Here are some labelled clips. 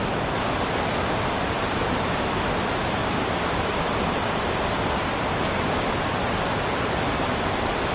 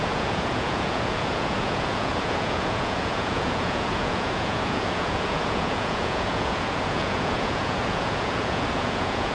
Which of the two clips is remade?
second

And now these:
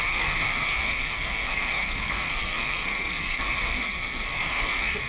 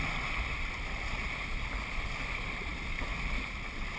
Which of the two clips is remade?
first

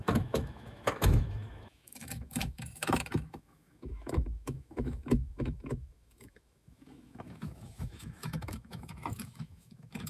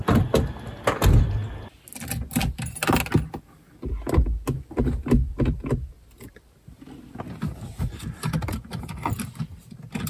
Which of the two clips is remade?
first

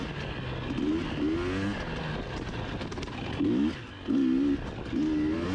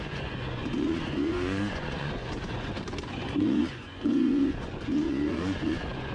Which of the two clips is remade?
second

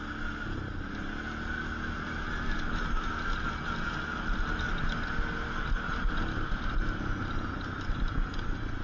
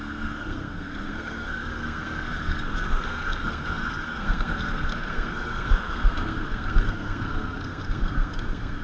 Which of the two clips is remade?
second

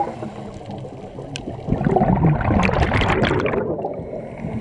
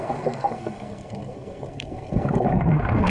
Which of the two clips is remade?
second